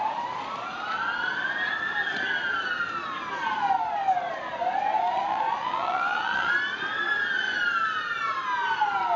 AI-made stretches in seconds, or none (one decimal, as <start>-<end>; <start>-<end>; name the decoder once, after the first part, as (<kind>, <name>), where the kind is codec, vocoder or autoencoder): 5.3-6.5 (vocoder, WaveNeXt)